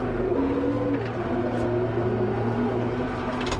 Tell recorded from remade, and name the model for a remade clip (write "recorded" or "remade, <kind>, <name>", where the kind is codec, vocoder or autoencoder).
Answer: recorded